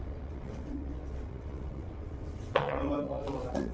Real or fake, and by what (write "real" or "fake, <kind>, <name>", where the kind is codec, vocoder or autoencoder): fake, vocoder, WaveNeXt